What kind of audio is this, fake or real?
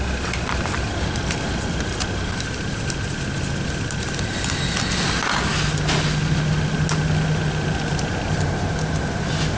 real